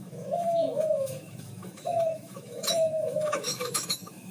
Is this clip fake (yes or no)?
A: yes